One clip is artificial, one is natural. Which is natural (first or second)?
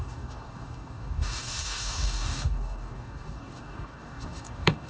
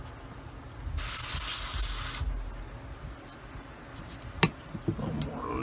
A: second